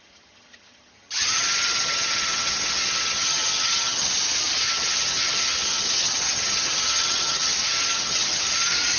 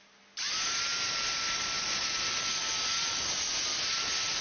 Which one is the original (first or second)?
second